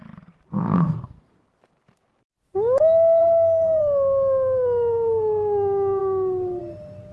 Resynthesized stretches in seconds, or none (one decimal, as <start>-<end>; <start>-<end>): 0.6-1.3; 3.2-3.8